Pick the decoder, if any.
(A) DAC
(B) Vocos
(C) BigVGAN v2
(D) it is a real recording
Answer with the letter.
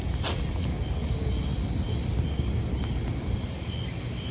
D